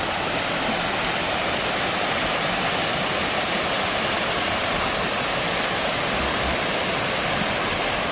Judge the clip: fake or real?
real